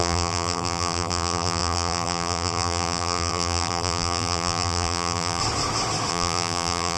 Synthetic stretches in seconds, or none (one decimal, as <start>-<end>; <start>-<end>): 0.0-5.4; 6.1-7.0